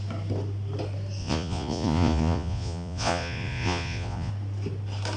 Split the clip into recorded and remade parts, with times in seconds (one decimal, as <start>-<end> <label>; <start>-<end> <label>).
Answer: 0.0-1.2 recorded; 1.2-4.3 remade; 4.3-5.2 recorded